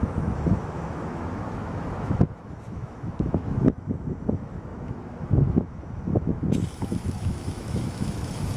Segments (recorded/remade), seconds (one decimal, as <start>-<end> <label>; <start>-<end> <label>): 0.0-8.6 remade